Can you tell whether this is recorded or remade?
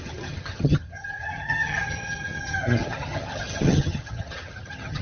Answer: remade